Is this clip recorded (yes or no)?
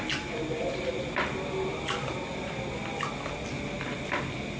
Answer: yes